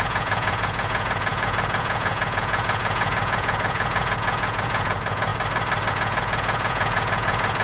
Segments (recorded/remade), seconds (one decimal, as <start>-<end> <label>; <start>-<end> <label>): 0.0-5.3 remade; 5.3-5.9 recorded; 5.9-7.6 remade